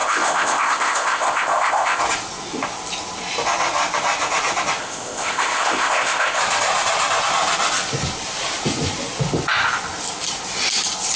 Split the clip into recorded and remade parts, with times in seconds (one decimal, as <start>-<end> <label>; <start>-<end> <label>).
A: 0.0-2.0 remade; 2.0-4.8 recorded; 4.8-6.4 remade; 6.4-11.2 recorded